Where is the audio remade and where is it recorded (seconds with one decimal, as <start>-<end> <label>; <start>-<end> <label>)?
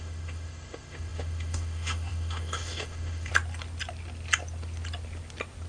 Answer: 0.0-3.3 remade; 3.3-5.7 recorded